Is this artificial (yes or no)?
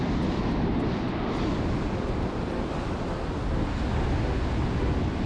no